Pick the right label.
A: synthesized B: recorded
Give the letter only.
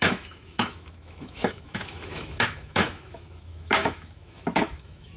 A